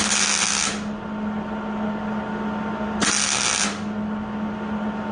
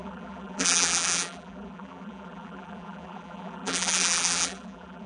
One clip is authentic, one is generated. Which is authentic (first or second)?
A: first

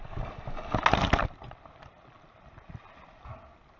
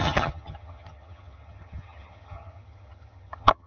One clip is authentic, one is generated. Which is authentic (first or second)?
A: first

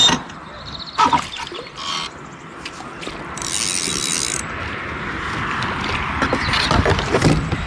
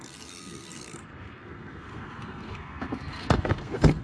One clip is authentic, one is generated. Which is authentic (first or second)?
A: first